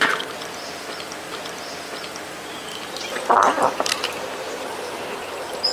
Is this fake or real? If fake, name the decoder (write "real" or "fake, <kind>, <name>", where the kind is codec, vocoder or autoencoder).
real